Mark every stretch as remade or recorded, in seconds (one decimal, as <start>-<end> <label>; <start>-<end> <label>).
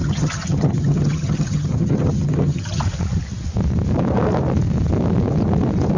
0.0-2.8 remade; 2.8-6.0 recorded